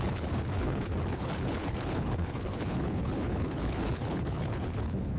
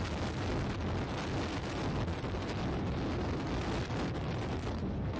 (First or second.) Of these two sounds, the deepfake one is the first